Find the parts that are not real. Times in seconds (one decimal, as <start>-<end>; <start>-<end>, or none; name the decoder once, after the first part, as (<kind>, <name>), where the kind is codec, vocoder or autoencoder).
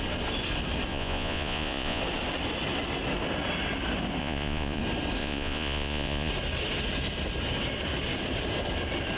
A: 0.9-2.0 (vocoder, Vocos); 4.2-4.8; 5.2-6.3